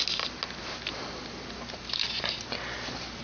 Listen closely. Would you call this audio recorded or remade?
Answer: recorded